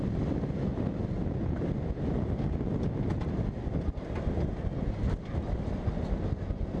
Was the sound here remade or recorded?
recorded